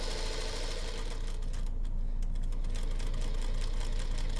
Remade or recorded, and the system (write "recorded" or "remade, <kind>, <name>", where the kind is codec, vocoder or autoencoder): recorded